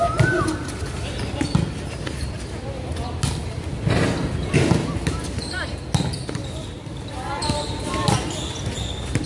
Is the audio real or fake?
real